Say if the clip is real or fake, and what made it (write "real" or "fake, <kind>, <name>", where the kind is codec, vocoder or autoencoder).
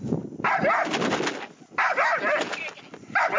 real